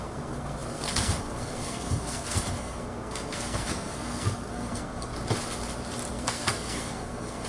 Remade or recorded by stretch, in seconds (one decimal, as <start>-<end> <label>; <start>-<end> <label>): 0.0-5.1 remade; 5.1-6.1 recorded; 6.1-7.5 remade